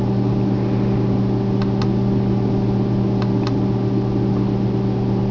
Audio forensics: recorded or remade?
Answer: recorded